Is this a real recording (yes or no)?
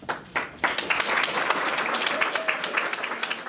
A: yes